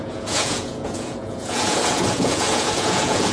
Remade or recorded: remade